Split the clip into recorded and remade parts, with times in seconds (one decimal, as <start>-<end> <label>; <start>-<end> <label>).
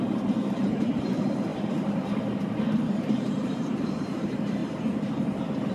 0.0-4.6 remade; 4.6-5.7 recorded